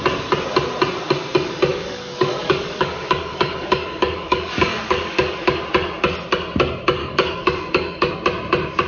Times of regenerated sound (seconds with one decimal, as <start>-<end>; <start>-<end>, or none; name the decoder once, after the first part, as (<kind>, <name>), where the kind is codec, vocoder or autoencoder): 1.7-5.6 (codec, DAC); 7.0-8.1